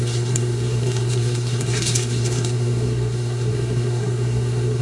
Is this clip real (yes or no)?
no